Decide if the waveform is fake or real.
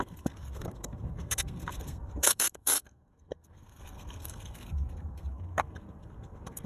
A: fake